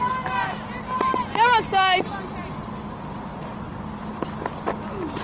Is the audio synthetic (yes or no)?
no